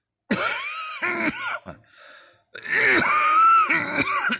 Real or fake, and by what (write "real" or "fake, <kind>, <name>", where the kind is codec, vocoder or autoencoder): real